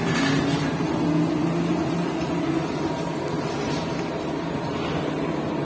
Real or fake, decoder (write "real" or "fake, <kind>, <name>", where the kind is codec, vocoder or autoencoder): real